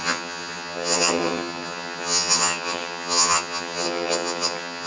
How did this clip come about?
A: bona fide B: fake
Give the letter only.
B